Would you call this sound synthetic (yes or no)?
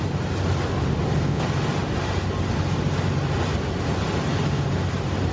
no